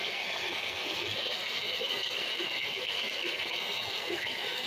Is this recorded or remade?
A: remade